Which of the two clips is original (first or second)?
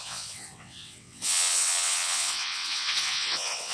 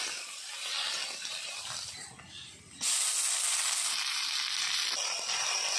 second